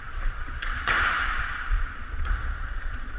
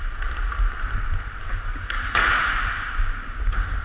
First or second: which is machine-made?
first